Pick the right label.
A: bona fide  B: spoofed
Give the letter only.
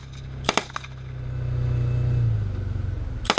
A